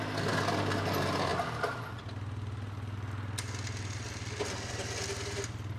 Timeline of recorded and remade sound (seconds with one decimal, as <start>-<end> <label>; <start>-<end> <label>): 0.0-5.8 recorded